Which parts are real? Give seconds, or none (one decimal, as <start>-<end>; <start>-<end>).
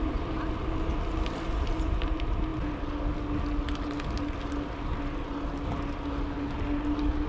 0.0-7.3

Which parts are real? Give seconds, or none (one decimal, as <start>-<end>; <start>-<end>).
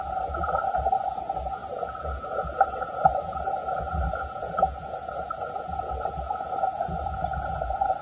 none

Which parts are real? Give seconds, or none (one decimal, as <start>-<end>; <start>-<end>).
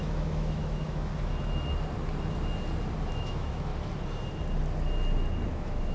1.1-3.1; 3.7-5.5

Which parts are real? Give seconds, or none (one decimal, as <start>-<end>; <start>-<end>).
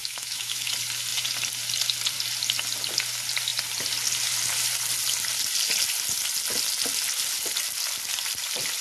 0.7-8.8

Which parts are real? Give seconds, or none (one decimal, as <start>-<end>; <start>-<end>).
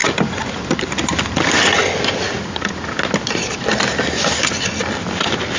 0.0-5.6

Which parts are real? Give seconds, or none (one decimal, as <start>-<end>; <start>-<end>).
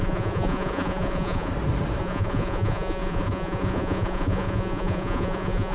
1.5-2.0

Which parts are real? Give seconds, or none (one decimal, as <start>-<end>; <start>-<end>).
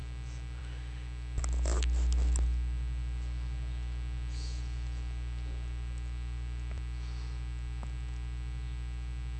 0.0-9.4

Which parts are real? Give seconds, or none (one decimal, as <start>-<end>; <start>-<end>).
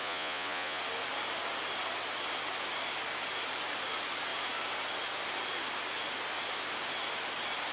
0.8-7.7